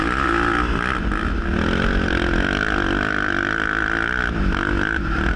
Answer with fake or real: real